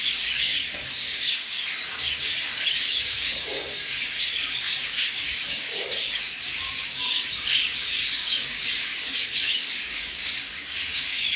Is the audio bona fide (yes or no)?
no